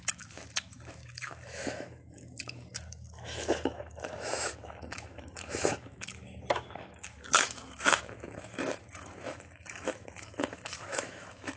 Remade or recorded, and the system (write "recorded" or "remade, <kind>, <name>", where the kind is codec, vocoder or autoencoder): remade, autoencoder, DAC-VAE